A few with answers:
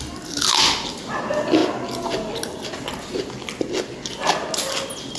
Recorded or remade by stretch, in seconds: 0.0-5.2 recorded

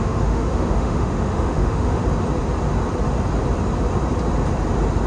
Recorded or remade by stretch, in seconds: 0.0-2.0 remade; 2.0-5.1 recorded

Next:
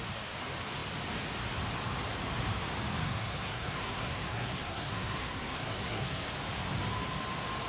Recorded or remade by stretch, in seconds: 0.0-3.0 recorded; 3.0-6.3 remade; 6.3-7.7 recorded

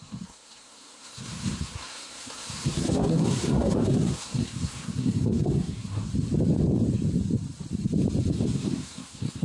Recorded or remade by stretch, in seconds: 0.0-6.1 remade; 6.1-8.3 recorded; 8.3-9.4 remade

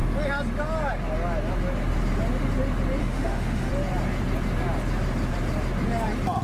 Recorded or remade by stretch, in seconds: 0.0-3.0 recorded; 3.0-3.7 remade; 3.7-6.4 recorded

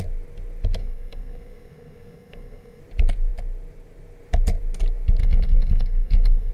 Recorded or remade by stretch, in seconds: 0.0-0.8 recorded; 0.8-2.8 remade; 2.8-5.2 recorded; 5.2-6.5 remade

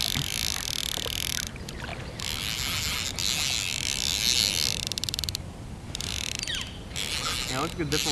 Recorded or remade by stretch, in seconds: 0.0-8.1 recorded